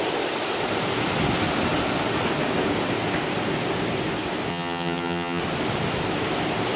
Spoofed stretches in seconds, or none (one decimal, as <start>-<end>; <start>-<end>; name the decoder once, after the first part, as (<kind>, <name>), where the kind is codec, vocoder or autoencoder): 4.5-5.4 (vocoder, HiFi-GAN)